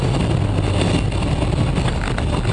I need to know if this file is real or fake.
real